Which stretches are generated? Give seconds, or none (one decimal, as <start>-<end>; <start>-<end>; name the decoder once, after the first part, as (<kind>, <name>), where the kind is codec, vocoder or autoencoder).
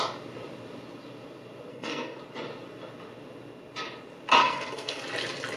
1.7-2.2 (codec, SNAC); 4.4-5.0